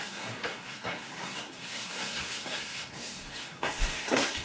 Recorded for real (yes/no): no